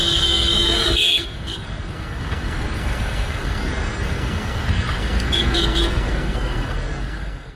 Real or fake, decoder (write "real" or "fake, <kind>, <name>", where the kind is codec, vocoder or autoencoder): fake, codec, SNAC